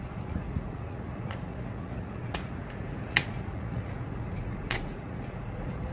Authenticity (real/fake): fake